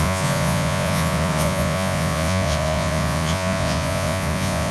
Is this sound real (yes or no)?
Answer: no